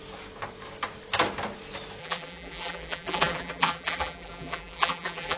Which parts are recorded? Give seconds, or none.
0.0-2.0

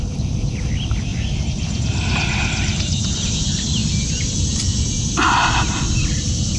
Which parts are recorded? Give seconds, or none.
4.7-5.5

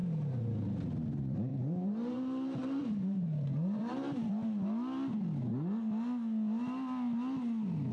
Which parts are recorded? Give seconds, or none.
0.0-1.5; 4.3-7.9

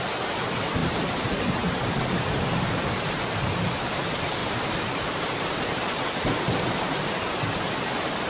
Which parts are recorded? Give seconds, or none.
0.0-0.8; 2.4-4.4; 6.3-8.3

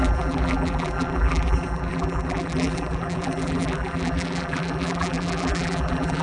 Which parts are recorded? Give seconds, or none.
none

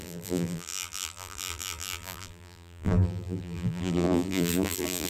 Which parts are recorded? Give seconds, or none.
none